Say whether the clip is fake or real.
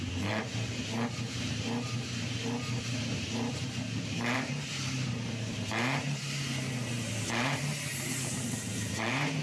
fake